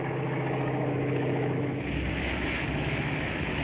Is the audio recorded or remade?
remade